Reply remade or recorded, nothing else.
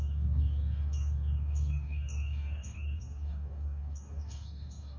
remade